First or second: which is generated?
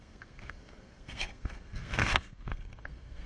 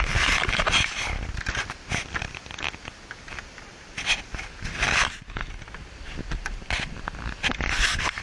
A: first